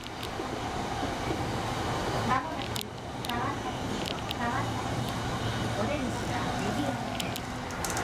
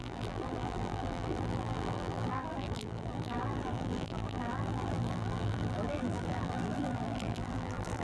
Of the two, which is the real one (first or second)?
first